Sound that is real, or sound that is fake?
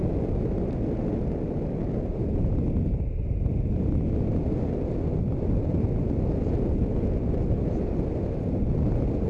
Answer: real